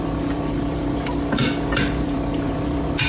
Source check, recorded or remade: remade